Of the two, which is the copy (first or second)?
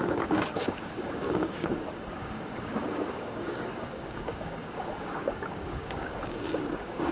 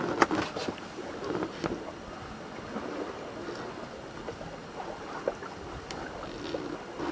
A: first